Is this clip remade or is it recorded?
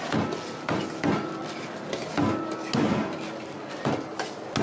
recorded